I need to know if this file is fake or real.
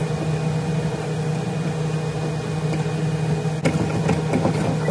real